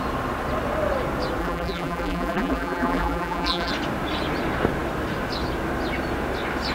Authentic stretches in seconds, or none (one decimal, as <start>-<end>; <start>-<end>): 0.0-1.4; 3.7-6.7